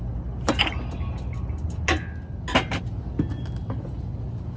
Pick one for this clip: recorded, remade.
recorded